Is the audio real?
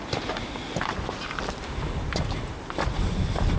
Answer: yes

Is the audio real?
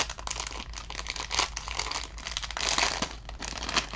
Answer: yes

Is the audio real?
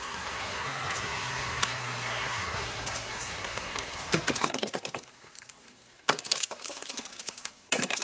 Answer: no